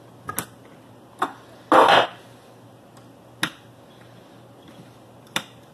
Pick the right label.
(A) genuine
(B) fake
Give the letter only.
A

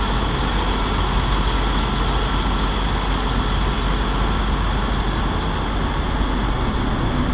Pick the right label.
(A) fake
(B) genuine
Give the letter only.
B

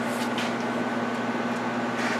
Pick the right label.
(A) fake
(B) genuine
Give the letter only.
B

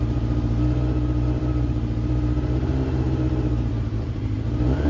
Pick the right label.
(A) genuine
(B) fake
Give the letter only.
B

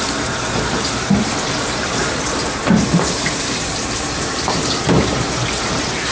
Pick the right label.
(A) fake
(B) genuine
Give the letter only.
A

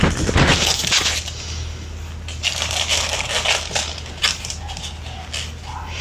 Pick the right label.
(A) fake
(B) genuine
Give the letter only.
B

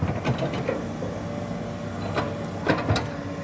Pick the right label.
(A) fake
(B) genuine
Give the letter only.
B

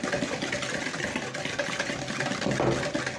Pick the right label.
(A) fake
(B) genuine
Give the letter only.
B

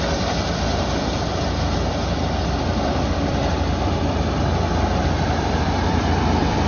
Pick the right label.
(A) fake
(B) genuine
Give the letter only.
A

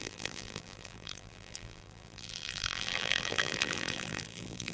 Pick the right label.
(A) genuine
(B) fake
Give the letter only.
B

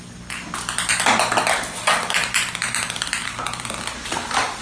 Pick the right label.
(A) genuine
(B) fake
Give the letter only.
A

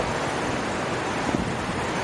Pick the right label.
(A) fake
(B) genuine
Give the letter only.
B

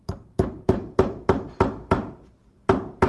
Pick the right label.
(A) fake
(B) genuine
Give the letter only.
A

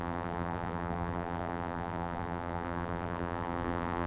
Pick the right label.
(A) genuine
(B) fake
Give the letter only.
B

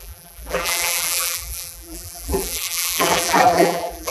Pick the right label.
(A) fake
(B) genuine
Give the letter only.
A